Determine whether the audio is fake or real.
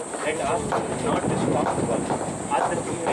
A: real